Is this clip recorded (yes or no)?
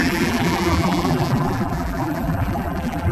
no